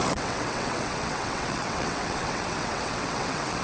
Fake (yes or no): yes